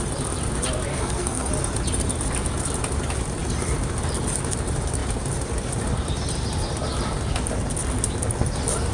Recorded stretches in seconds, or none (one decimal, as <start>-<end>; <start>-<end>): 0.0-0.9; 1.5-8.9

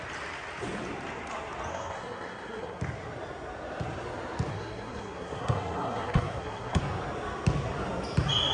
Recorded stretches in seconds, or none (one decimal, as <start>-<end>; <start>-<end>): 0.0-1.7; 2.8-4.5; 6.8-8.5

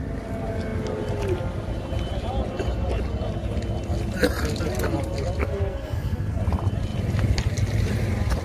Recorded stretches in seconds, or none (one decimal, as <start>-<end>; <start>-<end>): 0.0-5.4; 6.4-8.4